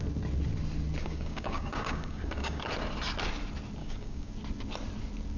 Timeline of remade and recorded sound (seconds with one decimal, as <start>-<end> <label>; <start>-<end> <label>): 0.0-1.0 recorded; 1.0-2.7 remade; 2.7-3.8 recorded; 3.8-4.3 remade; 4.3-5.4 recorded